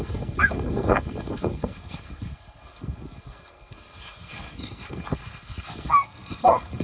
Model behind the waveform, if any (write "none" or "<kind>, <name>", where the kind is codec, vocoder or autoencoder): codec, SNAC